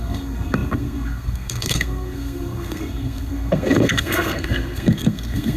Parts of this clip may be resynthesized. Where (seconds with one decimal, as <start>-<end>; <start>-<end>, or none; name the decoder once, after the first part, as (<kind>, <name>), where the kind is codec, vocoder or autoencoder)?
0.0-5.6 (codec, SNAC)